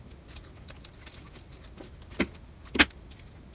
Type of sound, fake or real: real